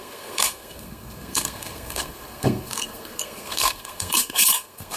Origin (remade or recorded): remade